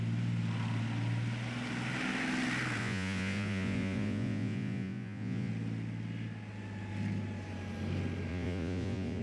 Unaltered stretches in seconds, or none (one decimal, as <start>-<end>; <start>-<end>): 0.0-2.8; 5.5-8.3